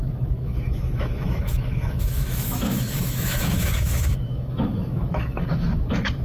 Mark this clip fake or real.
fake